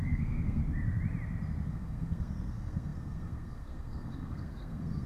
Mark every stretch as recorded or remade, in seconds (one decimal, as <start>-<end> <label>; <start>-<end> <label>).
0.0-0.6 remade; 0.6-1.7 recorded; 1.7-5.1 remade